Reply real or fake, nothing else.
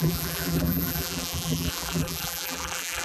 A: fake